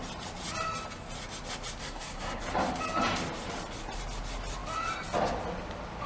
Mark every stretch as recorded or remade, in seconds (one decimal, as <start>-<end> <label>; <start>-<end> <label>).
0.0-1.8 recorded; 1.8-2.4 remade; 2.4-6.1 recorded